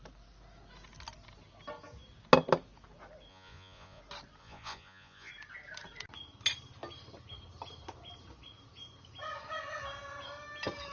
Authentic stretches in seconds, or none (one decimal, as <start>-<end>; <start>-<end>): 0.0-3.3; 4.0-4.4; 5.3-10.9